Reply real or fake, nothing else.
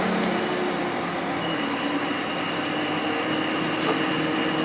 real